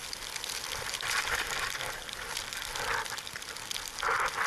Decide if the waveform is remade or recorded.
recorded